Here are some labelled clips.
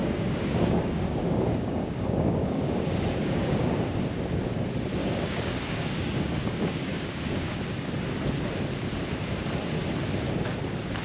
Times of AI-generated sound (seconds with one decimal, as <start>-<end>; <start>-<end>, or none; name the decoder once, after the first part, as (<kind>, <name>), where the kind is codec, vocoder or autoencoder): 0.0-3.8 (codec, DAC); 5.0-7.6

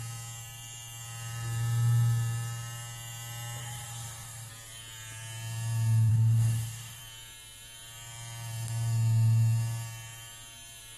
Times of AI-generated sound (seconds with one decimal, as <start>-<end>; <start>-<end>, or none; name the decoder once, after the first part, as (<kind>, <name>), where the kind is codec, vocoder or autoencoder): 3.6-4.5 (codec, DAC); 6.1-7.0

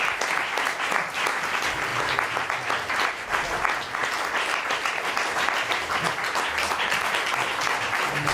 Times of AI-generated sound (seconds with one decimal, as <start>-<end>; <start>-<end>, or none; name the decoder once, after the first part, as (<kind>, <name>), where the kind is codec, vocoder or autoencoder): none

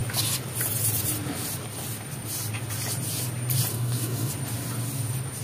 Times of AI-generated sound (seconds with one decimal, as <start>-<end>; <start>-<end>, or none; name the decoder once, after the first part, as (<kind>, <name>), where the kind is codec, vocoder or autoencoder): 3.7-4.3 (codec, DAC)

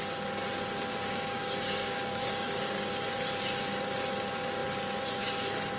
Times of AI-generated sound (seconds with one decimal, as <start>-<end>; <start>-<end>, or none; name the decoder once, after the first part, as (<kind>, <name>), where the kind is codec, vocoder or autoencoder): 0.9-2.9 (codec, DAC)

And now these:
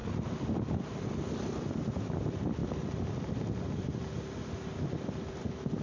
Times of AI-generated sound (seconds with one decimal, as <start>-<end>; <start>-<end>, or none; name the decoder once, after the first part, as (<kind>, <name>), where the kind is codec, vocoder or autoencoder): none